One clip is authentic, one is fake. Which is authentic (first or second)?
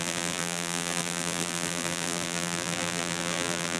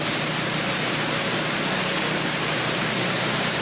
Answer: second